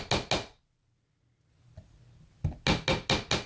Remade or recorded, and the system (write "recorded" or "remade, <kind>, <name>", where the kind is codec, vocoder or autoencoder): recorded